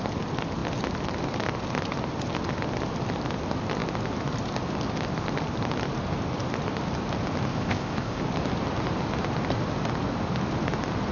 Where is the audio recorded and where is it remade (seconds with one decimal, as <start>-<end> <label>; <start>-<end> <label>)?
0.0-7.5 recorded; 7.5-8.2 remade; 8.2-11.1 recorded